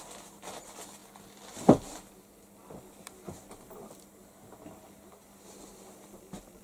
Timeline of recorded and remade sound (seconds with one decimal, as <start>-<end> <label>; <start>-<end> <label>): 0.0-6.6 recorded